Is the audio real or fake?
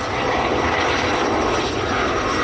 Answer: real